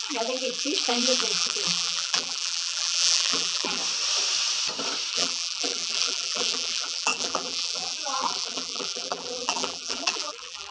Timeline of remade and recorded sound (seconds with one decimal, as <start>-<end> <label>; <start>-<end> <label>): 0.0-3.8 remade; 3.8-5.1 recorded; 5.1-10.7 remade